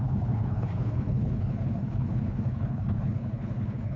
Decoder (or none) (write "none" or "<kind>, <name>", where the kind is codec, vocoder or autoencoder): codec, HILCodec